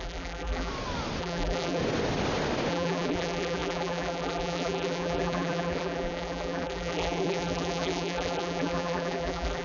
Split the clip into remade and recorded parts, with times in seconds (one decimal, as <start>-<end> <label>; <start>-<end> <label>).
0.0-0.7 remade; 0.7-1.2 recorded; 1.2-1.8 remade; 1.8-2.7 recorded; 2.7-9.6 remade